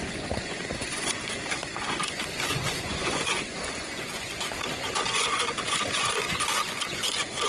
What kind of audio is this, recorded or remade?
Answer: remade